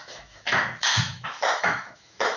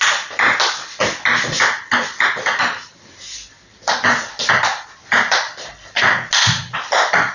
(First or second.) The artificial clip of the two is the first